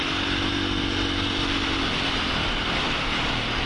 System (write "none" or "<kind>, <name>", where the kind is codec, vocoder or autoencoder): none